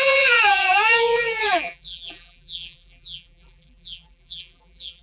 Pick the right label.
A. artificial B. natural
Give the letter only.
A